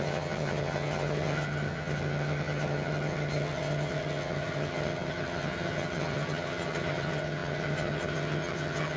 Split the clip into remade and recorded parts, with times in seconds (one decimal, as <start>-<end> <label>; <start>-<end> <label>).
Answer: 0.0-9.0 remade